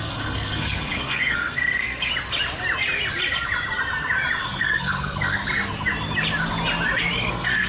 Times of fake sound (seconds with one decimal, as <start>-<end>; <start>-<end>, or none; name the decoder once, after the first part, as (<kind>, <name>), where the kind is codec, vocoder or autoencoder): 0.0-2.1 (codec, SNAC); 4.6-5.4; 7.3-7.7